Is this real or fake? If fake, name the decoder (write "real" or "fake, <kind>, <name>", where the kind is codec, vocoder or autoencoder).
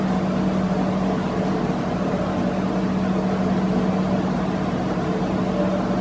real